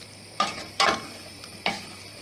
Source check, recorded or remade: remade